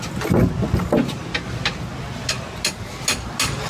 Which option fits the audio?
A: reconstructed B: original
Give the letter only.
B